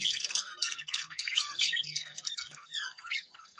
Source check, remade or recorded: remade